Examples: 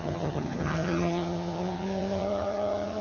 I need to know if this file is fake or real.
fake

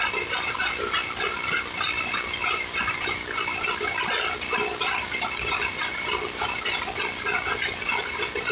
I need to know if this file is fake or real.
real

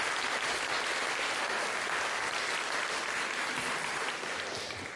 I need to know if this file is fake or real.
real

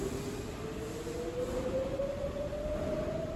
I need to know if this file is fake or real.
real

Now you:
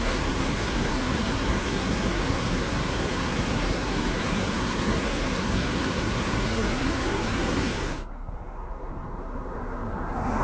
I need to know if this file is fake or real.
fake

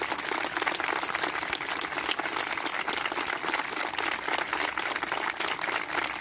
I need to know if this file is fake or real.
real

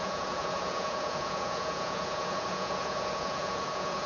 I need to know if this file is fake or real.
fake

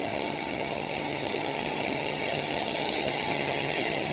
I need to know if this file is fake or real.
fake